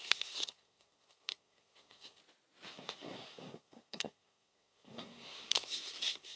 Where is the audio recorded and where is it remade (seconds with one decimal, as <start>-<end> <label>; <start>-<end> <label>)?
0.0-2.2 remade; 2.2-2.7 recorded; 2.7-6.4 remade